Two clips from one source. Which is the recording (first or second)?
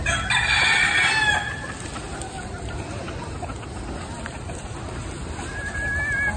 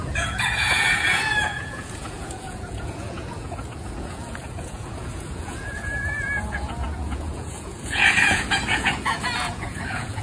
first